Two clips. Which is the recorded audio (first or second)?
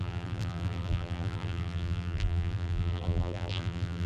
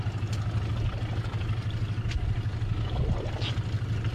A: second